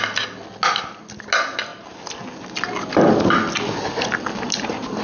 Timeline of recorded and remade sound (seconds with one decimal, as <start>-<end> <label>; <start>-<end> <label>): 0.0-5.0 recorded